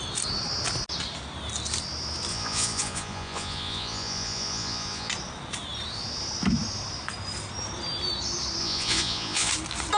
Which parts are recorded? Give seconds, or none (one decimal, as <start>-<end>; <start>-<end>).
0.0-2.3; 5.1-8.6; 9.5-10.0